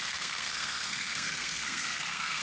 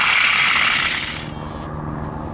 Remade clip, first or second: first